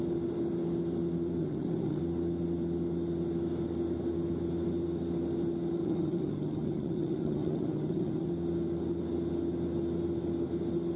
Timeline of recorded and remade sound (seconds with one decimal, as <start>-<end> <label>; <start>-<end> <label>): 0.0-1.4 recorded; 1.4-2.0 remade; 2.0-5.8 recorded; 5.8-8.3 remade; 8.3-11.0 recorded